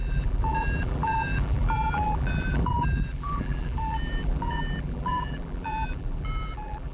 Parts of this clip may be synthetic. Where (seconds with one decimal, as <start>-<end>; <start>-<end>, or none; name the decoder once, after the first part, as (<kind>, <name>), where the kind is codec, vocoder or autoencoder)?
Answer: 0.0-6.9 (vocoder, BigVGAN v2)